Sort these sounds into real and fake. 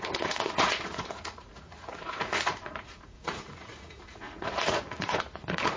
fake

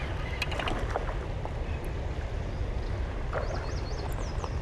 real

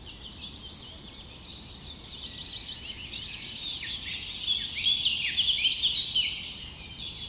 real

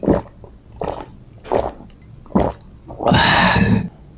real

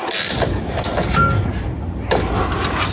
real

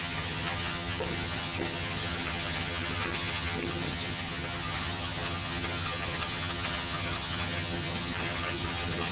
fake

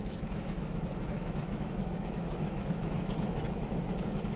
fake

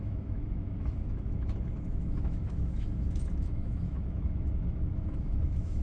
fake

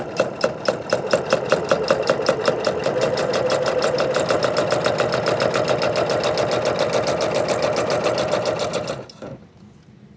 real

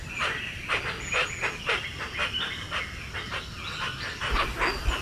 real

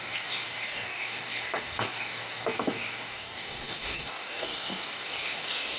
fake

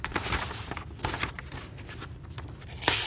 real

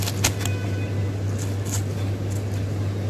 real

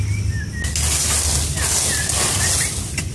real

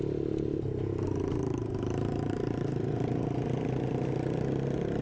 real